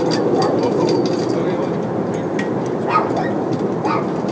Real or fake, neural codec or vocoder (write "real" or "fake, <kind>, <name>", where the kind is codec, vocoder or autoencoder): real